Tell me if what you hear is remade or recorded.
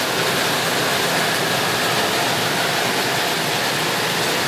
recorded